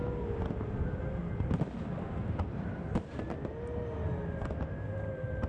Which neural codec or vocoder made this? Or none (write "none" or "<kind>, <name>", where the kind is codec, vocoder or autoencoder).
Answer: none